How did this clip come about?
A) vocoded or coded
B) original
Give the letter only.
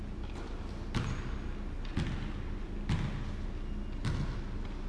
B